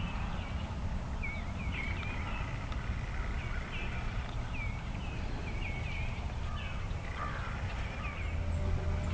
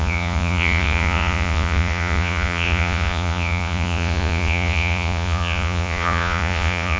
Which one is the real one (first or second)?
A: first